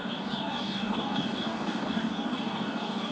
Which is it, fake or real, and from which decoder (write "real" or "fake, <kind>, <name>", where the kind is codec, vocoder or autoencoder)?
fake, codec, DAC